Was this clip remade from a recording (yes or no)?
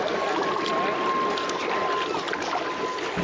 no